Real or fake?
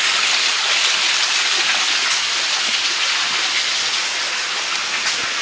real